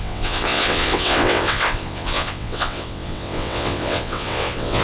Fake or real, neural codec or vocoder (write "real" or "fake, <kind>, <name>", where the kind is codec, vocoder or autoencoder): fake, vocoder, WaveNeXt